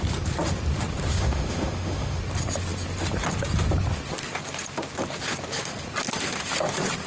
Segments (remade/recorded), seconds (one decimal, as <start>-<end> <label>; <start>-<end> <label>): 0.0-1.1 recorded; 1.1-2.2 remade; 2.2-7.1 recorded